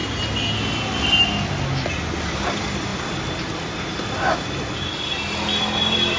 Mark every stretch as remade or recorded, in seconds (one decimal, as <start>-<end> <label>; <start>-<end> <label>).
0.0-6.2 recorded